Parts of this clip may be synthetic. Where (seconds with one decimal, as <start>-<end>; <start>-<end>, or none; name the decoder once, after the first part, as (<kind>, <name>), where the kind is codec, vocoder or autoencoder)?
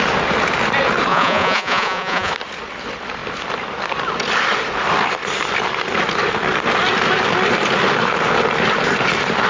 1.1-2.3 (vocoder, Vocos)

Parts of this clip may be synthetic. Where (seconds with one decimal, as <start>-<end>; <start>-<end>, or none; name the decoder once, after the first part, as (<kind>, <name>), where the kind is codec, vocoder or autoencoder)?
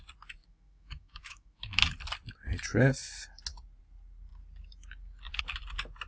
0.4-1.8 (autoencoder, DAC-VAE)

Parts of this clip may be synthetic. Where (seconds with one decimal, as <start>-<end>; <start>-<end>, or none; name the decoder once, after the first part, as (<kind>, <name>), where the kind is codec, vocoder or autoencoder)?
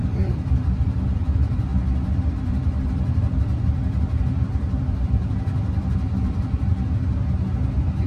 0.0-1.7 (vocoder, BigVGAN v2); 2.3-6.7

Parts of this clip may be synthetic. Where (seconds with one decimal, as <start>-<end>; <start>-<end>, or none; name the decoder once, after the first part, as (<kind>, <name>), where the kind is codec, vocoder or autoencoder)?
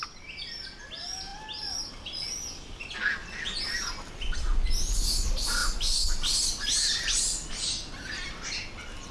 none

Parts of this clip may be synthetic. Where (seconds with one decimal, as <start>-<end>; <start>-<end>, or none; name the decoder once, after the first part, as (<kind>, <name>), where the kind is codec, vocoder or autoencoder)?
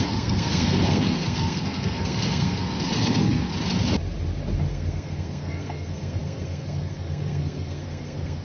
0.0-3.5 (codec, SNAC); 4.7-8.4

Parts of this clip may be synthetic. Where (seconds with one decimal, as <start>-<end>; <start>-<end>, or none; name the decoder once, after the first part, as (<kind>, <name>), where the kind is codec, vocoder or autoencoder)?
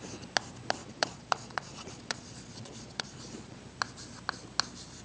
0.8-3.6 (vocoder, Vocos)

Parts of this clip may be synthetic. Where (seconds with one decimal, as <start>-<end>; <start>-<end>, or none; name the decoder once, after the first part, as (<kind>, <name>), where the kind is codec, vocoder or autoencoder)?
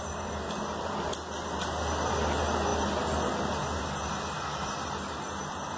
none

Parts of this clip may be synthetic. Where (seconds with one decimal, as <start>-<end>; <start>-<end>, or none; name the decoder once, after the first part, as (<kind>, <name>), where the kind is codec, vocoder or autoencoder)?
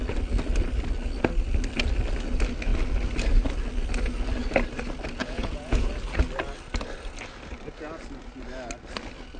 5.2-5.9 (vocoder, Vocos)